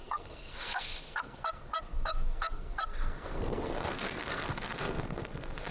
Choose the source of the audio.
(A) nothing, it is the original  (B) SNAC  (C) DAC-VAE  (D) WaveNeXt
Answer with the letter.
B